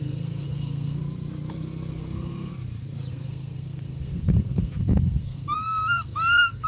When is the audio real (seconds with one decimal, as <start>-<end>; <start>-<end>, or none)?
1.0-1.9; 2.5-3.1